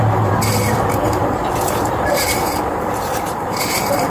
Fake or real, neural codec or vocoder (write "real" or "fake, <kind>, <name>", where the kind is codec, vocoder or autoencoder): fake, vocoder, BigVGAN v2